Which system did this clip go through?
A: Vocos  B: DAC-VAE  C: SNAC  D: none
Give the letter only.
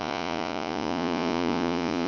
A